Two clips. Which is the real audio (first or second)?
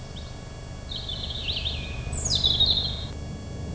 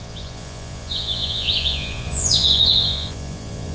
first